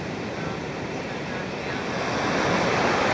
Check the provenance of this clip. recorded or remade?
recorded